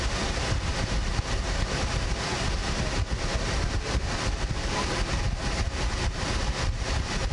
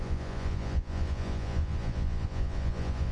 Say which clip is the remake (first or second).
second